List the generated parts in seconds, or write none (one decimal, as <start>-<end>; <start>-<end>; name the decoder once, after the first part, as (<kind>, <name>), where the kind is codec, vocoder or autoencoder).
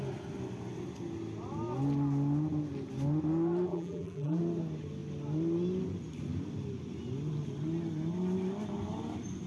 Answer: 3.7-4.4 (vocoder, BigVGAN v2)